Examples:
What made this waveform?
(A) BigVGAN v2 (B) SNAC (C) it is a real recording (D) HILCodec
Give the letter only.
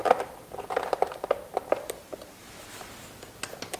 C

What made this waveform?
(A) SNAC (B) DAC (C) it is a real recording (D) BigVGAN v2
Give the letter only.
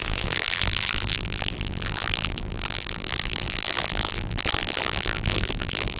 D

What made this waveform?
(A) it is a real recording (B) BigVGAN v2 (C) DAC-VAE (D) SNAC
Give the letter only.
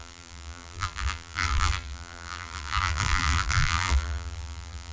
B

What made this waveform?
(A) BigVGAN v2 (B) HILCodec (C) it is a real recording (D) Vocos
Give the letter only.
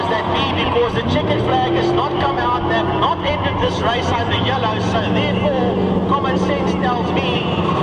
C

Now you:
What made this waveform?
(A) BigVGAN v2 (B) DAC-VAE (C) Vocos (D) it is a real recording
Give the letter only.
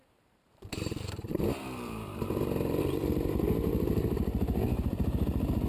A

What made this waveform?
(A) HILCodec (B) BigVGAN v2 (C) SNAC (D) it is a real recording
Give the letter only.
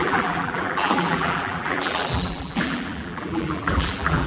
B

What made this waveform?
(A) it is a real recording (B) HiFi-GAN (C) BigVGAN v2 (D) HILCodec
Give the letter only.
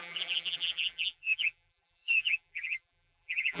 C